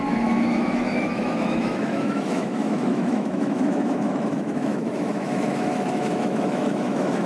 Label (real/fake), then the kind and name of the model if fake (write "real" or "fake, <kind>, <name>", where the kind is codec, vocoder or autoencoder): fake, autoencoder, DAC-VAE